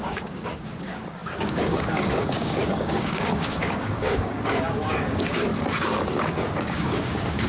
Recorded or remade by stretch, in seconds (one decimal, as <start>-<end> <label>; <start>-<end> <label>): 0.0-5.5 remade; 5.5-6.1 recorded; 6.1-7.5 remade